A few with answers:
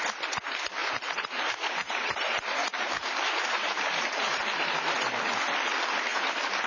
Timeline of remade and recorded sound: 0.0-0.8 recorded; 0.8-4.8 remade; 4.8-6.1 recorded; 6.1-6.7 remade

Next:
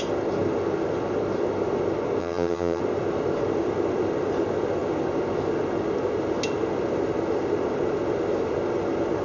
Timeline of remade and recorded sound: 0.0-2.2 recorded; 2.2-2.8 remade; 2.8-9.2 recorded